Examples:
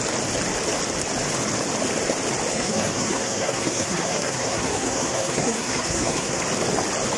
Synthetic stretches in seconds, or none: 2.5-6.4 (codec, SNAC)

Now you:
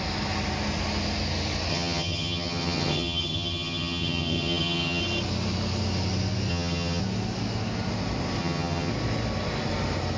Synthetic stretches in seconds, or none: 1.7-5.0 (vocoder, HiFi-GAN); 6.5-7.0; 8.4-8.9

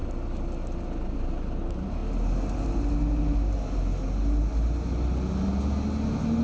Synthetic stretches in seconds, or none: none

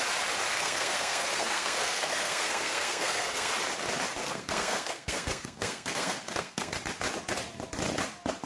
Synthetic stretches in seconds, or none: 0.5-3.5 (codec, SNAC); 4.2-6.7

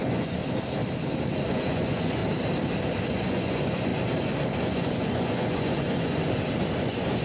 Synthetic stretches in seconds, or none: 0.0-0.4 (vocoder, Vocos); 1.5-2.2; 3.1-3.9; 4.6-6.2; 6.8-7.2